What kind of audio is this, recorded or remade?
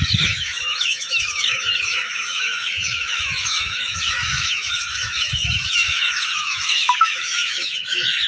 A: remade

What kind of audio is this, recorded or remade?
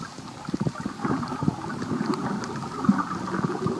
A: recorded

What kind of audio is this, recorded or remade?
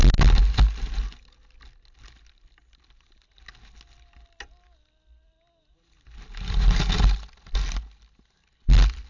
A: recorded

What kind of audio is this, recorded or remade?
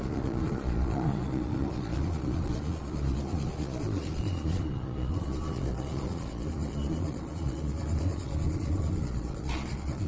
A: remade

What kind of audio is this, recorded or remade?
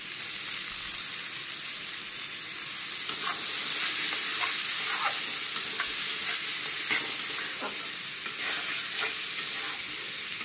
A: recorded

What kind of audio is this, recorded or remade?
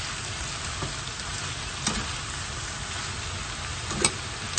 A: recorded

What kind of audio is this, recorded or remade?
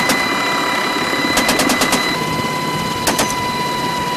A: recorded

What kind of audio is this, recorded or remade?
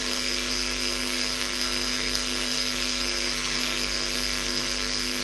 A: remade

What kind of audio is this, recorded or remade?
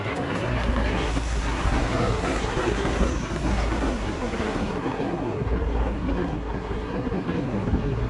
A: remade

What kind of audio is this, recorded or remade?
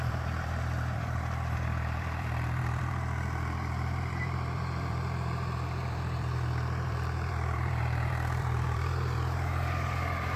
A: remade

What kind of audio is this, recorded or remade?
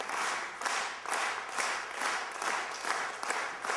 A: recorded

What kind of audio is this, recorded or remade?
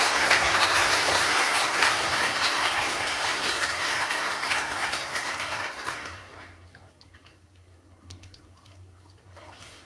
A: remade